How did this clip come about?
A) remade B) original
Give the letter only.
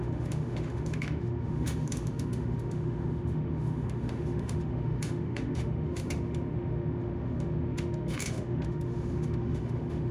A